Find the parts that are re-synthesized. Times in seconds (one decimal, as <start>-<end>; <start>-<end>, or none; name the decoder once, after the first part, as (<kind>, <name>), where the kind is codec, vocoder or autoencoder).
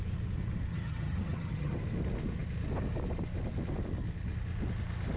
0.7-1.8 (vocoder, HiFi-GAN)